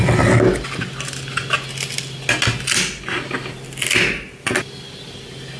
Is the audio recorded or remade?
recorded